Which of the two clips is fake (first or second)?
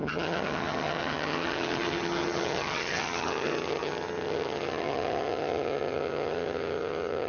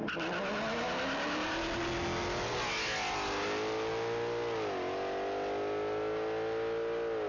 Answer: first